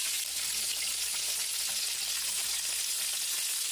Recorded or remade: recorded